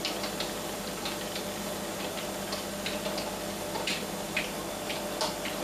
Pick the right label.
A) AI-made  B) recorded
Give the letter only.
B